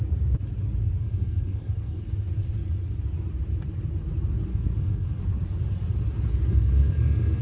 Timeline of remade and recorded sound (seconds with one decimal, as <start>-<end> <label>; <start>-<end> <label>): 0.0-1.0 recorded; 1.0-2.0 remade; 2.0-4.5 recorded; 4.5-5.2 remade; 5.2-6.5 recorded; 6.5-7.4 remade